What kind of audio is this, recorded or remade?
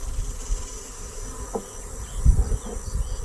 recorded